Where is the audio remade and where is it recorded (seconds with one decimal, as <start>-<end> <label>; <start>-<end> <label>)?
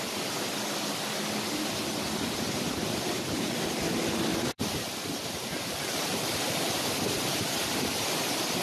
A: 0.0-4.3 recorded; 4.3-6.8 remade; 6.8-8.6 recorded